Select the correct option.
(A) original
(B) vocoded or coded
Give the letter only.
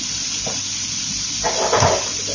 A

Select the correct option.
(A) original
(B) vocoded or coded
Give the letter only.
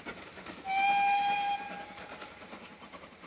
A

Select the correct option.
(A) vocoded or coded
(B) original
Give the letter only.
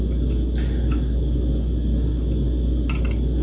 B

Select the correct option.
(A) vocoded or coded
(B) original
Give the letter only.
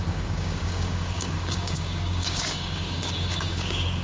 A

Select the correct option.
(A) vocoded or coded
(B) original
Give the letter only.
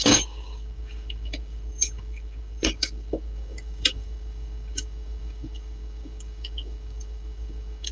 A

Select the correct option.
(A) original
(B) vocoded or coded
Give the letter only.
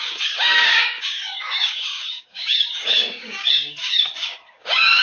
B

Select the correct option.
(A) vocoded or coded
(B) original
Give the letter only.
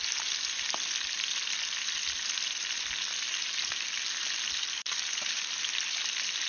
B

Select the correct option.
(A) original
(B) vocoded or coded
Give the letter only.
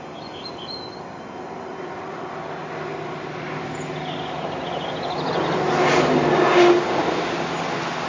A